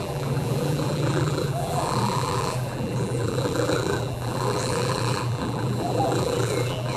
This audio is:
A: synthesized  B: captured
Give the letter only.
A